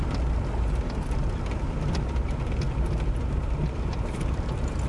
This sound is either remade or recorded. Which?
recorded